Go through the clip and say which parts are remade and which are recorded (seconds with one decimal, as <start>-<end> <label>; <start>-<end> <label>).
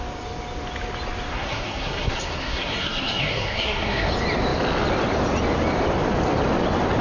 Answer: 0.0-1.3 recorded; 1.3-4.1 remade; 4.1-7.0 recorded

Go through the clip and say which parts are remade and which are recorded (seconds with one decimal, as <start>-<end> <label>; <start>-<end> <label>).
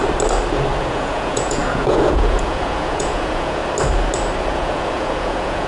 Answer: 0.0-0.8 recorded; 0.8-3.6 remade; 3.6-4.5 recorded; 4.5-5.7 remade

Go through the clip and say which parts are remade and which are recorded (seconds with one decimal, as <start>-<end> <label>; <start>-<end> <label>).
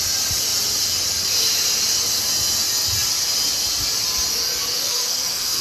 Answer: 0.0-4.7 recorded; 4.7-5.6 remade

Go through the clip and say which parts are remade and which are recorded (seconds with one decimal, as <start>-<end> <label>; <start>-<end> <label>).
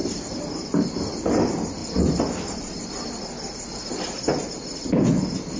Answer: 0.0-5.6 recorded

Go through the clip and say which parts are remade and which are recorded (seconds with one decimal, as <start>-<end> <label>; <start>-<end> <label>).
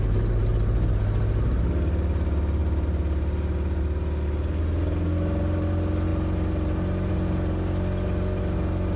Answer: 0.0-9.0 recorded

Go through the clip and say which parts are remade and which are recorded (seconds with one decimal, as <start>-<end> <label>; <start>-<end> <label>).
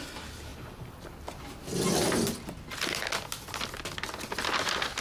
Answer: 0.0-5.0 recorded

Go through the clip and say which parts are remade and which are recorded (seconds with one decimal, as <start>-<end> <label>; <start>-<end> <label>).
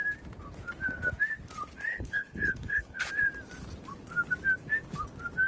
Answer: 0.0-1.9 recorded; 1.9-3.1 remade; 3.1-5.5 recorded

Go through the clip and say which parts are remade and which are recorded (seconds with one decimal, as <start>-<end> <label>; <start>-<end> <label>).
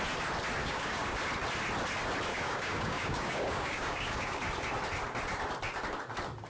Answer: 0.0-0.6 recorded; 0.6-1.2 remade; 1.2-2.3 recorded; 2.3-4.4 remade; 4.4-6.5 recorded